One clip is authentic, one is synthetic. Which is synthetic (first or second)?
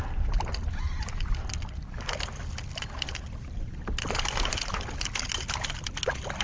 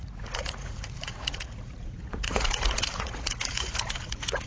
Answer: second